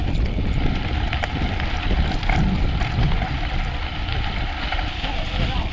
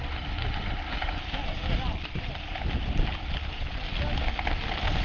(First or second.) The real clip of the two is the second